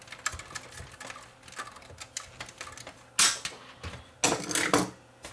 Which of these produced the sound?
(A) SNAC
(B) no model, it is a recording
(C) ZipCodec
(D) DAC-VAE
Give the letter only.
B